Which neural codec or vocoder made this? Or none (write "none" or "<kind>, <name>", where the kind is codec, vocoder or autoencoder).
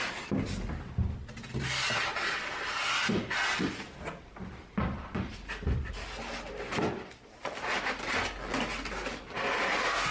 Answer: none